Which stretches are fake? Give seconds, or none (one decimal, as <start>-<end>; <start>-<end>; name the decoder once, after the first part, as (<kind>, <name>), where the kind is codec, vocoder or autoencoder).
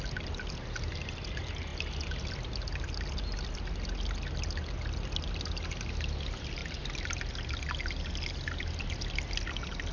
none